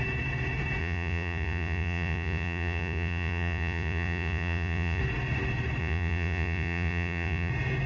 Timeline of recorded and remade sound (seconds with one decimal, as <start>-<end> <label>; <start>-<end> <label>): 0.0-0.8 recorded; 0.8-5.0 remade; 5.0-5.8 recorded; 5.8-7.5 remade; 7.5-7.9 recorded